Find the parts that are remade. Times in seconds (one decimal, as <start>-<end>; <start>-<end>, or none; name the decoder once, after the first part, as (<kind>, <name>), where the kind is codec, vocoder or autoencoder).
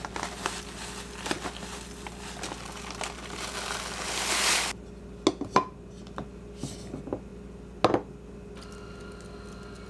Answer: none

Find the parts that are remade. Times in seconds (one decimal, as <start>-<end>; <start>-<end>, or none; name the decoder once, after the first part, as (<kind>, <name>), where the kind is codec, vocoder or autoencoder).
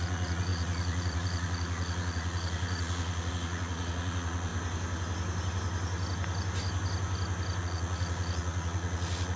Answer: 0.0-4.5 (vocoder, Vocos); 7.6-9.4